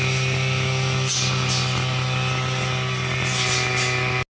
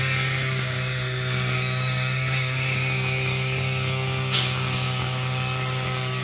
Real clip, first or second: first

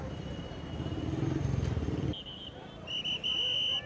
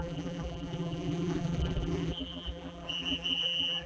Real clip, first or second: first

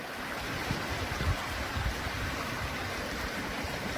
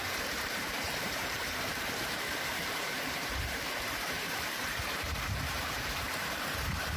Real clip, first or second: first